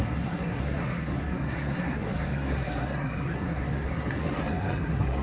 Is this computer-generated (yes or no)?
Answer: yes